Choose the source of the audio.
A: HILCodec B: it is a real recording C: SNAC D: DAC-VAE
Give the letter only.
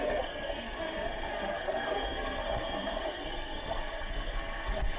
C